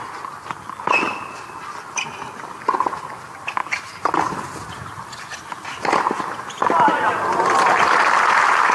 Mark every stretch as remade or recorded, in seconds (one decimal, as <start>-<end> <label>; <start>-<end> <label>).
0.0-3.6 recorded; 3.6-4.1 remade; 4.1-8.7 recorded